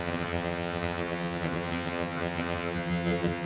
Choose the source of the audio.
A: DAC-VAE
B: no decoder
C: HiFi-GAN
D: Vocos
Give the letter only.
C